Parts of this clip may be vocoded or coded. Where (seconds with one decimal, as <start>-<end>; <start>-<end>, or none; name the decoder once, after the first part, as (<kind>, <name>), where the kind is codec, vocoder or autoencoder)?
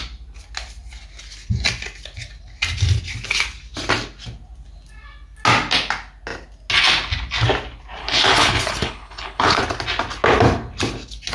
8.0-9.6 (codec, HILCodec)